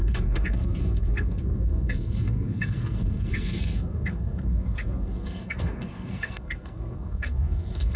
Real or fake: fake